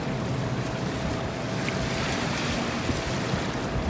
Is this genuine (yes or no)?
yes